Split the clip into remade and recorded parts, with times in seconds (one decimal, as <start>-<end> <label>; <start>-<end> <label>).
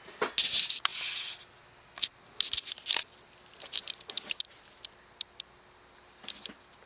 0.0-6.9 recorded